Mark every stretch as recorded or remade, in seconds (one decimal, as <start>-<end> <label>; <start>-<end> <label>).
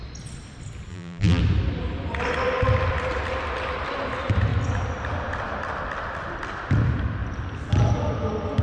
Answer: 0.0-0.9 recorded; 0.9-1.4 remade; 1.4-8.6 recorded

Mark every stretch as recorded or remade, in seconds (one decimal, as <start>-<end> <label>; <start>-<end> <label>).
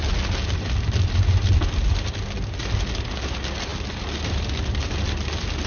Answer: 0.0-5.7 recorded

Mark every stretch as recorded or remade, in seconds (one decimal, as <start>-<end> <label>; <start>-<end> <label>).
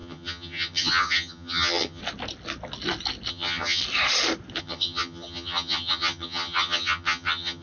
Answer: 0.0-2.0 remade; 2.0-3.3 recorded; 3.3-3.8 remade; 3.8-4.6 recorded; 4.6-7.6 remade